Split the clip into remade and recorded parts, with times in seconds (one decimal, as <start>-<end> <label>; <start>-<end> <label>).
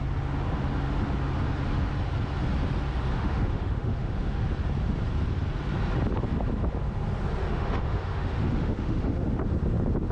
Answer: 0.0-3.1 recorded; 3.1-4.4 remade; 4.4-7.5 recorded; 7.5-9.4 remade; 9.4-10.1 recorded